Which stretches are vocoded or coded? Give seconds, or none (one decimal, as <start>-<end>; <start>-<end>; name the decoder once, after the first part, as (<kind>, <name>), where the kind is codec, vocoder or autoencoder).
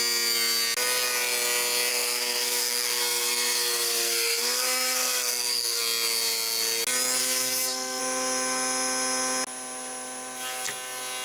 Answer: 1.9-5.8 (codec, SNAC); 7.2-8.0